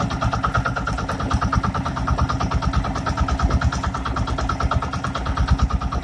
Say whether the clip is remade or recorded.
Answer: recorded